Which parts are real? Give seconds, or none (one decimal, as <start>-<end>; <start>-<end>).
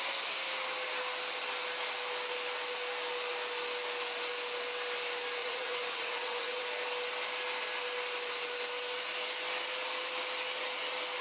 0.0-5.4; 6.6-11.2